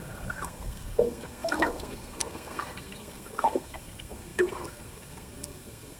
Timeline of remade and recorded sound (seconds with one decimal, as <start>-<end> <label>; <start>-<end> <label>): 0.0-6.0 remade